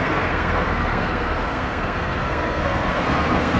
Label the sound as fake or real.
fake